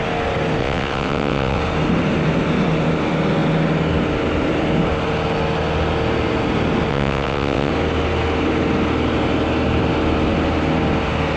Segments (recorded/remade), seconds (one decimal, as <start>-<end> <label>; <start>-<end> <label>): 0.0-0.6 recorded; 0.6-1.6 remade; 1.6-6.9 recorded; 6.9-7.7 remade; 7.7-11.4 recorded